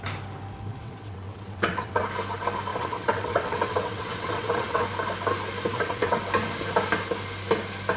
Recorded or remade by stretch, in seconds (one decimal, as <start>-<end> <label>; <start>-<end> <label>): 0.0-0.8 recorded; 0.8-2.0 remade; 2.0-2.7 recorded; 2.7-4.8 remade; 4.8-5.7 recorded; 5.7-6.2 remade; 6.2-8.0 recorded